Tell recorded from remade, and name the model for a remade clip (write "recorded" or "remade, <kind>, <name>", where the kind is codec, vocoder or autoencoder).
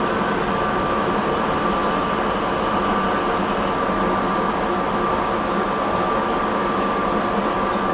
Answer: recorded